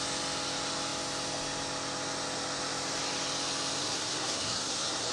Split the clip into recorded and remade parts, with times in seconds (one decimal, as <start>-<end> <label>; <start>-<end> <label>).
0.0-3.8 recorded; 3.8-5.1 remade